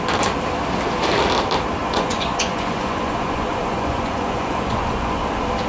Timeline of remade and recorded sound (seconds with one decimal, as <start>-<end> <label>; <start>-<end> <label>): 0.0-1.8 recorded; 1.8-5.2 remade; 5.2-5.7 recorded